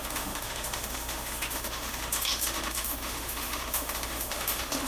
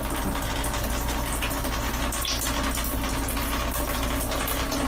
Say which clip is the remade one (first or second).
first